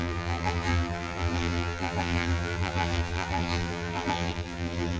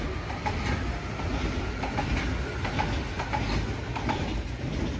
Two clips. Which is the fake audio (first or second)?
first